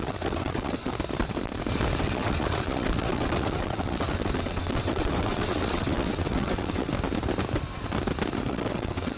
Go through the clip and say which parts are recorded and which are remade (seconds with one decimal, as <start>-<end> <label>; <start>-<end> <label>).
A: 0.0-0.9 remade; 0.9-2.0 recorded; 2.0-6.9 remade; 6.9-8.5 recorded; 8.5-9.2 remade